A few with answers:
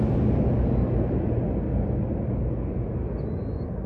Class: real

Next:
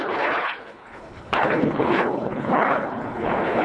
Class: fake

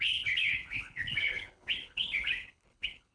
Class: fake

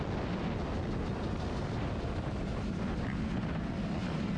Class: real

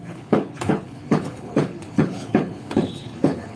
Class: fake